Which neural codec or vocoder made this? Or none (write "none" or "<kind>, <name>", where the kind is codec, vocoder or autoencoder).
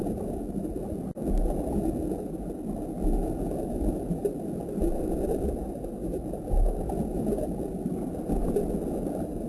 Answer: none